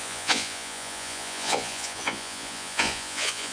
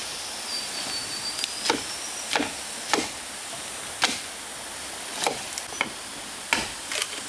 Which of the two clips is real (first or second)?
second